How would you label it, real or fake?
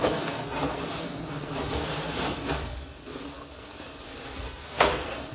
fake